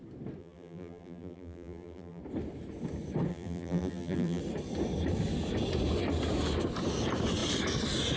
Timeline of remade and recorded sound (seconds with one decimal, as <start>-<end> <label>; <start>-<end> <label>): 0.0-0.4 recorded; 0.4-2.2 remade; 2.2-3.3 recorded; 3.3-4.4 remade; 4.4-8.2 recorded